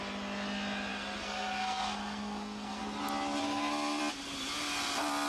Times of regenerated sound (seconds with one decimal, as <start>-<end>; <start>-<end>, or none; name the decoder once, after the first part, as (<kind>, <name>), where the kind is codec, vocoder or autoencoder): 0.9-2.8 (codec, SNAC); 3.4-4.0